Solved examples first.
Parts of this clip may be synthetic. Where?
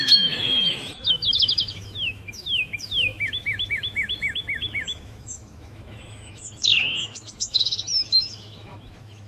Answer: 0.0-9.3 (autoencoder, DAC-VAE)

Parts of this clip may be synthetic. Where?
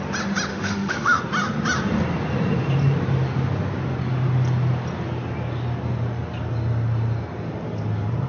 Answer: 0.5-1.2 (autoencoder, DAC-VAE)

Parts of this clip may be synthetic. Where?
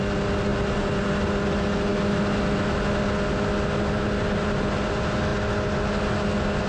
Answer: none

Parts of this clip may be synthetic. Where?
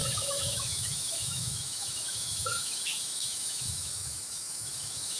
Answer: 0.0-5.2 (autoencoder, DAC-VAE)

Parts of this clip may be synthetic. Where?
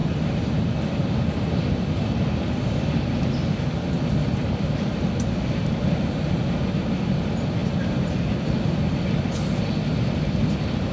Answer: none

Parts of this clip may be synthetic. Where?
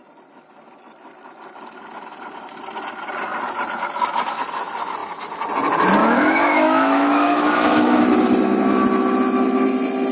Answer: 6.0-8.0 (autoencoder, DAC-VAE)